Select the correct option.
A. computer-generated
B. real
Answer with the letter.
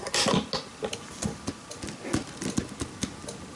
B